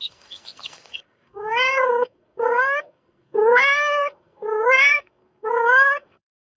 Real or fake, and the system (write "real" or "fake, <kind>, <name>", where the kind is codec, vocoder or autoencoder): fake, codec, SNAC